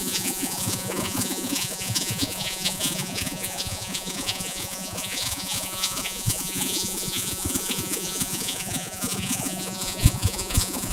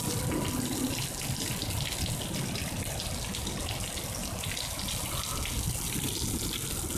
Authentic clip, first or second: second